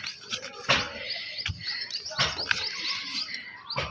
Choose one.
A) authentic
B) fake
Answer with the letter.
A